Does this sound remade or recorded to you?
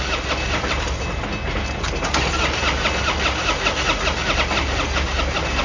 recorded